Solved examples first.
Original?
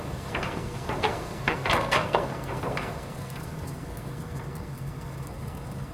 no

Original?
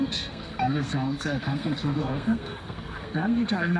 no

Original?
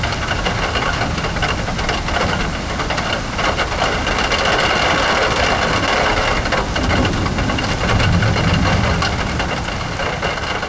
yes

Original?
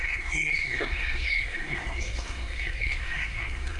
no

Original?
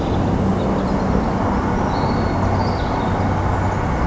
yes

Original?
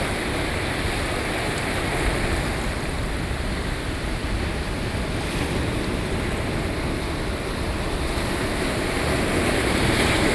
yes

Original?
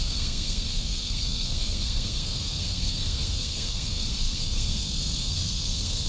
no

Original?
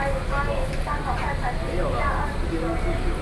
yes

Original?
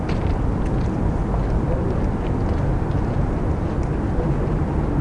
yes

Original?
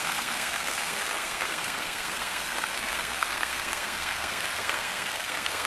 no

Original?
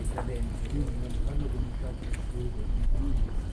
yes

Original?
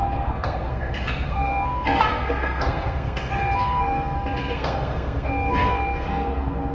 no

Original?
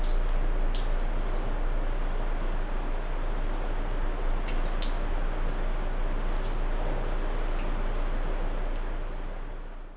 yes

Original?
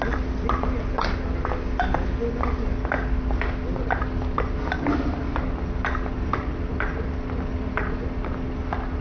yes